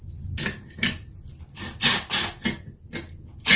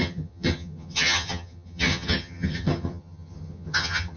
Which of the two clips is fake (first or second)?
second